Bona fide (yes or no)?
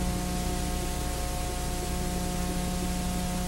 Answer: yes